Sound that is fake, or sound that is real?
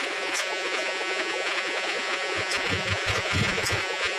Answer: fake